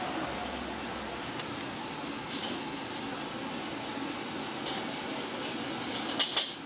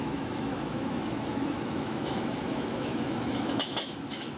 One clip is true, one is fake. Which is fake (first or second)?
second